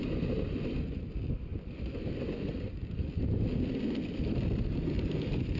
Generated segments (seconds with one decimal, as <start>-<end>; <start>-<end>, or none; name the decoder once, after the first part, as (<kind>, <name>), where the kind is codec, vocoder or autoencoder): none